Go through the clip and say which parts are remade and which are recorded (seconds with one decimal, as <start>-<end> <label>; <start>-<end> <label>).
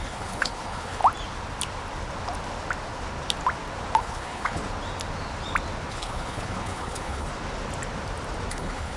0.0-1.0 remade; 1.0-4.0 recorded; 4.0-4.6 remade; 4.6-5.9 recorded; 5.9-7.3 remade; 7.3-8.5 recorded; 8.5-9.0 remade